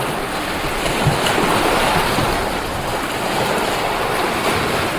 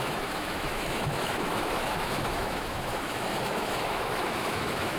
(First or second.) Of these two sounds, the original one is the first